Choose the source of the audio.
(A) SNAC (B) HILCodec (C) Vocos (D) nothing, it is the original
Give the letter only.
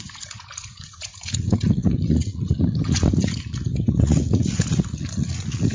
C